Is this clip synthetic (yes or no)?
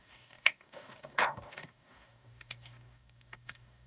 yes